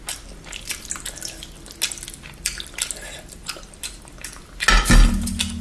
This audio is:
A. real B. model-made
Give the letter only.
A